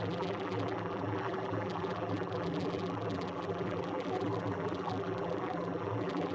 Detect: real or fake fake